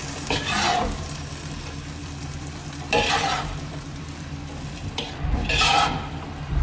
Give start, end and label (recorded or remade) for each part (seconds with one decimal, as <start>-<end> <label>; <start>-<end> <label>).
0.0-1.3 remade; 1.3-2.0 recorded; 2.0-6.0 remade; 6.0-6.6 recorded